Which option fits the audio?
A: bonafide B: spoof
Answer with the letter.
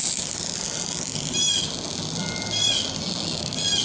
A